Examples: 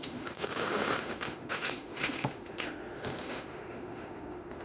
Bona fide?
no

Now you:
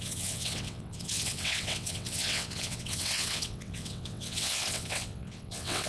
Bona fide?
no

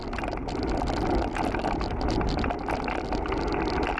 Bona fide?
yes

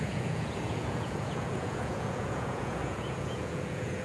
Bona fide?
no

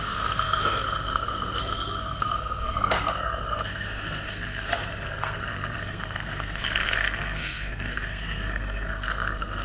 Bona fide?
no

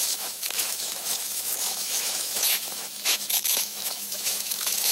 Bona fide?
no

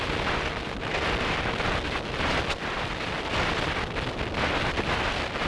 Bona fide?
yes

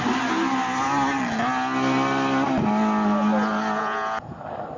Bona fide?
yes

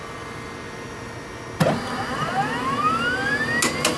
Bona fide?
yes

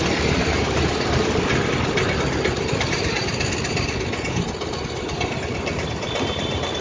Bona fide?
yes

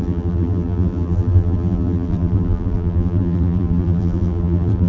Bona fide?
no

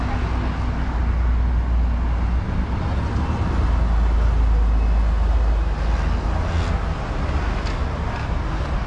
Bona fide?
yes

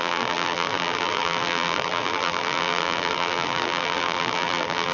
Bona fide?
no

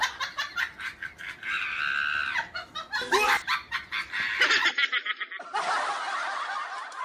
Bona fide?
no